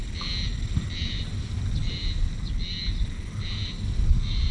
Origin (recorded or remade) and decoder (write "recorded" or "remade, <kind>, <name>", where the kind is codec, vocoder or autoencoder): recorded